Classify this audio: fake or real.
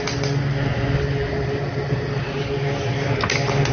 real